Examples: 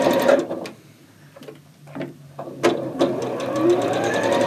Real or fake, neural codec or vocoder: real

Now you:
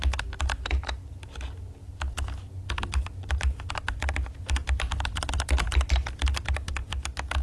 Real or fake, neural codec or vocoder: real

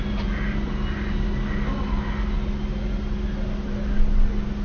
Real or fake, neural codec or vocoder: real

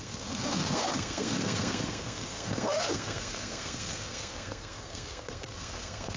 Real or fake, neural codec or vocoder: fake, codec, SNAC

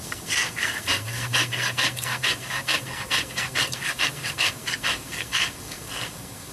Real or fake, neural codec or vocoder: fake, codec, SNAC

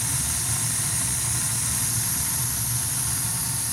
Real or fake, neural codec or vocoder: real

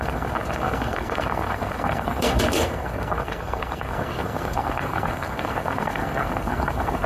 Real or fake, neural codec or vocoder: fake, codec, SNAC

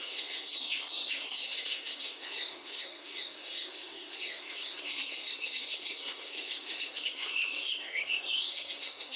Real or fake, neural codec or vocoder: fake, codec, SNAC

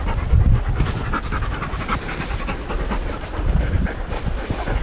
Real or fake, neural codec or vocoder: real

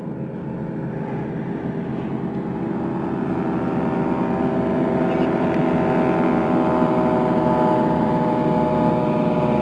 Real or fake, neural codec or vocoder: real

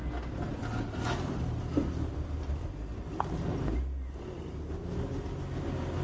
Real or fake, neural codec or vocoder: real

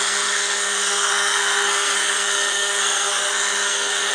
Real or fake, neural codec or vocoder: fake, codec, SNAC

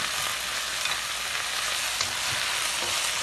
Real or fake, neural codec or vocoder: real